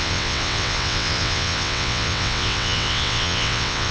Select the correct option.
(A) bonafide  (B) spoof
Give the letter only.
B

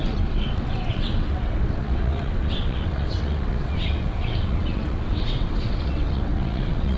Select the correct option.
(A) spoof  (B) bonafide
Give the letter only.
A